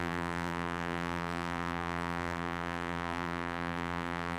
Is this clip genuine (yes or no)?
no